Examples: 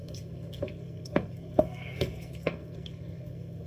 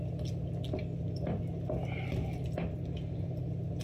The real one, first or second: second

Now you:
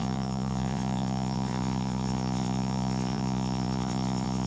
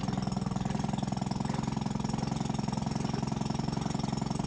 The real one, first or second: second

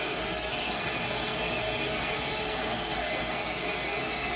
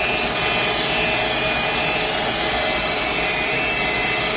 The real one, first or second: second